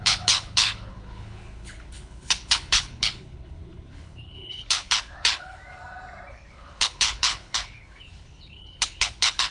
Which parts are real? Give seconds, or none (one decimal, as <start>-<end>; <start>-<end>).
5.6-6.3